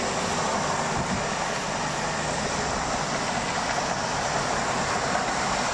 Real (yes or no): yes